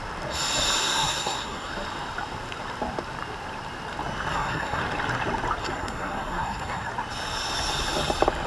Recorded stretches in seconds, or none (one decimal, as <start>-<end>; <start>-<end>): 0.0-0.8; 1.7-4.3; 4.8-5.6; 6.9-8.5